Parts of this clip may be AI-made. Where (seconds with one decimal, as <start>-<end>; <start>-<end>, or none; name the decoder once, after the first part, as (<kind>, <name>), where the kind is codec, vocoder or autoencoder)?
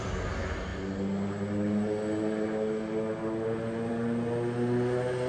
none